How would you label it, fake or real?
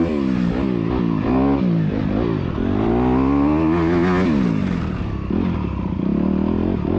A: real